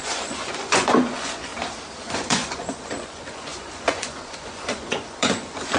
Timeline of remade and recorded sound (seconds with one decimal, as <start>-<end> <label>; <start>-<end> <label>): 0.0-1.5 remade; 1.5-2.0 recorded; 2.0-5.8 remade